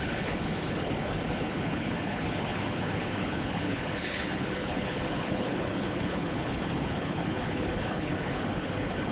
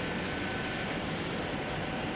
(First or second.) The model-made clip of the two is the first